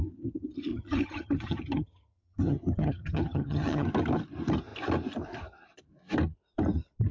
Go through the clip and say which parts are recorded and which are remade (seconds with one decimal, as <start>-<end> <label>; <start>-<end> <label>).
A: 0.0-0.7 recorded; 0.7-3.9 remade; 3.9-7.1 recorded